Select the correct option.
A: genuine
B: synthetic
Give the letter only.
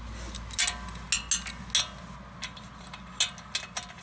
A